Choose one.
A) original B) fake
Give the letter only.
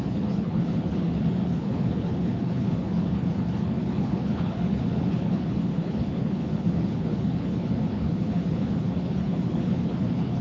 B